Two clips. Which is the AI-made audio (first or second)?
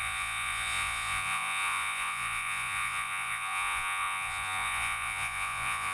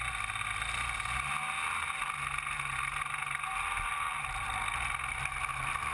first